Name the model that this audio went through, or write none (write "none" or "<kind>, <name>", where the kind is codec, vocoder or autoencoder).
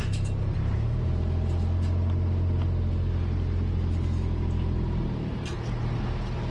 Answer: none